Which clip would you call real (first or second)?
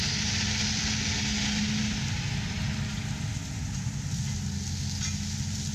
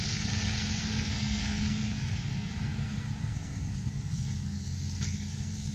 first